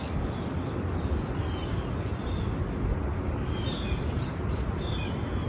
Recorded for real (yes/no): yes